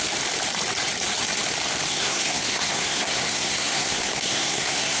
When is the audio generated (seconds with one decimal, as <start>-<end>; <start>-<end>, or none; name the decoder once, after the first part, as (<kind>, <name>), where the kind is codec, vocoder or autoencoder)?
1.9-5.0 (codec, SNAC)